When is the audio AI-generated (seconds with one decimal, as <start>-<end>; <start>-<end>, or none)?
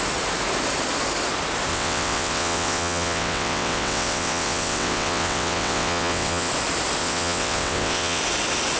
1.7-6.5; 7.0-8.2